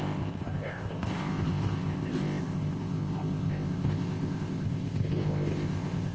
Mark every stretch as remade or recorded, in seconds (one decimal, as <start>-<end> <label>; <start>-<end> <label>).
0.0-6.1 remade